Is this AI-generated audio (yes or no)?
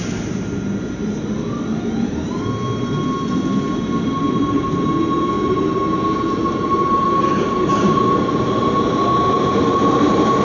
no